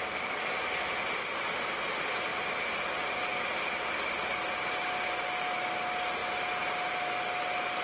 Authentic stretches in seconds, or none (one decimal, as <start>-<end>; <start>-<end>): 0.0-7.8